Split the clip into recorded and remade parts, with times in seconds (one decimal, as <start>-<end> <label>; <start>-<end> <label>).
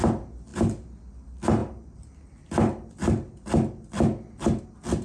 0.0-5.0 recorded